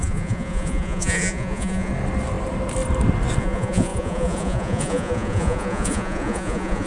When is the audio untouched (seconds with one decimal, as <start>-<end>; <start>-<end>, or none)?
1.9-3.4